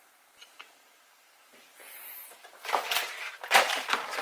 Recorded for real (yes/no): no